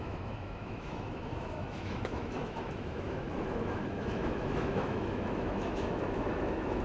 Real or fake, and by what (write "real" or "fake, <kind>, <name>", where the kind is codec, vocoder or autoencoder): fake, autoencoder, DAC-VAE